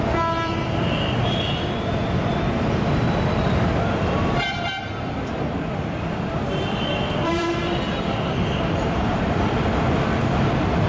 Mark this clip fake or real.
fake